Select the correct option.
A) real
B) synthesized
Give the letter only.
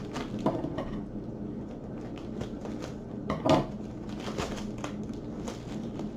A